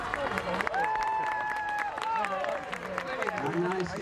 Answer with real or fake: fake